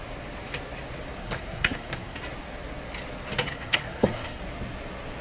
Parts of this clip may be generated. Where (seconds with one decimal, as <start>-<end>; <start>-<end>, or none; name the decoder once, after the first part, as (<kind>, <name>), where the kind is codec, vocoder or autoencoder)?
1.2-2.2 (codec, SNAC); 3.5-4.4